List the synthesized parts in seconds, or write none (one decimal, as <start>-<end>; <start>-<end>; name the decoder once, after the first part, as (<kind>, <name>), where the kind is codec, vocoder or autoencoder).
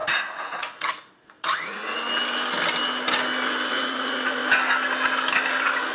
0.0-1.8 (vocoder, Vocos); 3.7-4.4